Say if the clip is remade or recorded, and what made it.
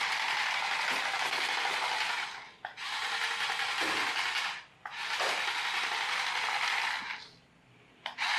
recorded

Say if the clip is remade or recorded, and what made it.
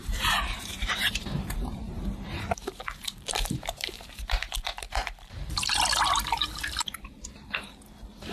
remade, vocoder, BigVGAN v2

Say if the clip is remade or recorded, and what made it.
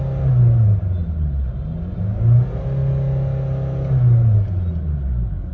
recorded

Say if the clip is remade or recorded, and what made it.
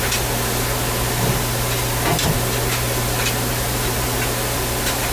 recorded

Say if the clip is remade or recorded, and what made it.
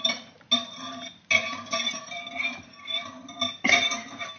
recorded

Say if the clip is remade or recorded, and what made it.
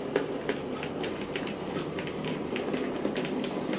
recorded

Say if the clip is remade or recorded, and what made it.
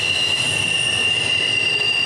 recorded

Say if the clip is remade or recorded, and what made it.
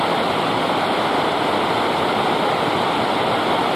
recorded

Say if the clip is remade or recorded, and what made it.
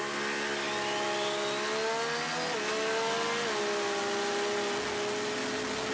recorded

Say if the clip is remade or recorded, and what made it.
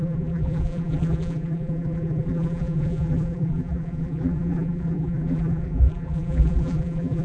remade, vocoder, BigVGAN v2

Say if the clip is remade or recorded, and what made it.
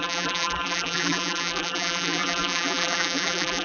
remade, vocoder, BigVGAN v2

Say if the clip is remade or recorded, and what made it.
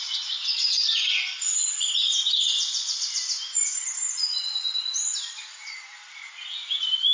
remade, vocoder, BigVGAN v2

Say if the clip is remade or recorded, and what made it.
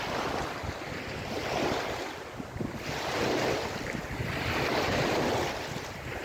recorded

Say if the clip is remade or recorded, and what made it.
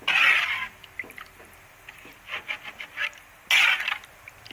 recorded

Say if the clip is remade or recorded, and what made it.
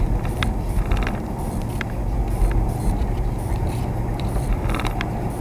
remade, vocoder, BigVGAN v2